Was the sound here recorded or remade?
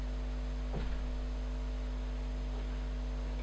recorded